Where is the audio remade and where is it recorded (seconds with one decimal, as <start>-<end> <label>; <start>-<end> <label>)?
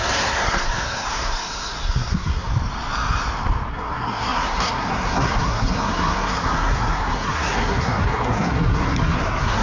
0.0-2.5 remade; 2.5-3.7 recorded; 3.7-9.6 remade